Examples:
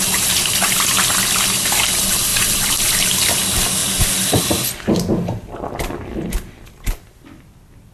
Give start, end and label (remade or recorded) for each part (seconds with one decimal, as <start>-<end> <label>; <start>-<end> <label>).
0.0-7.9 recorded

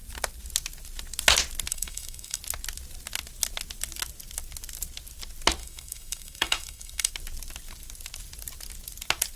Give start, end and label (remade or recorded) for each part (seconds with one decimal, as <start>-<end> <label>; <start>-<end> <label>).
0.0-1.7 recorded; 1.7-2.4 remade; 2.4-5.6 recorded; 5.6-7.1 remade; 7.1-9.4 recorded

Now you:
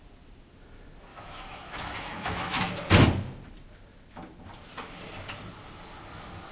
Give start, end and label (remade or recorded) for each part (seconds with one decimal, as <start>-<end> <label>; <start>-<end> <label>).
0.0-1.1 recorded; 1.1-2.6 remade; 2.6-6.5 recorded